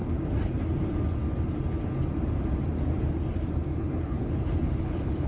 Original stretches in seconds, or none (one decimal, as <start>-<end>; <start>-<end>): 0.0-3.7